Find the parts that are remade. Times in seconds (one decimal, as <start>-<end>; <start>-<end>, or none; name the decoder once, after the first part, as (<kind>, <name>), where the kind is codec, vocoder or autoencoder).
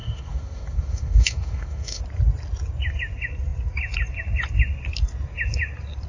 0.0-2.0 (autoencoder, DAC-VAE)